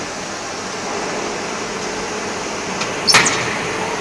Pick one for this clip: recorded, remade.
recorded